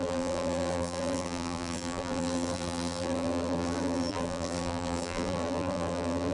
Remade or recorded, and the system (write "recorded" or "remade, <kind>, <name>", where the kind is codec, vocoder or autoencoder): remade, vocoder, BigVGAN v2